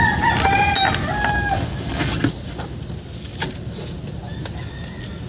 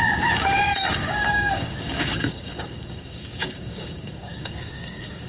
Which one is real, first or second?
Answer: first